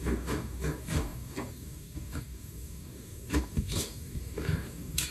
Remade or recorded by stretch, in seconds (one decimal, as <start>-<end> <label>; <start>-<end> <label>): 0.0-5.1 remade